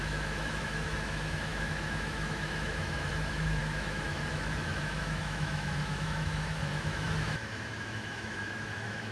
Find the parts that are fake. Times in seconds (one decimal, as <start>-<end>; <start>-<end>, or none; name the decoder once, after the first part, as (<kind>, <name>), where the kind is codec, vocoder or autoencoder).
0.0-9.1 (autoencoder, DAC-VAE)